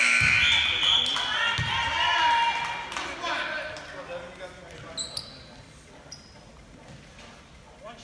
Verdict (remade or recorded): recorded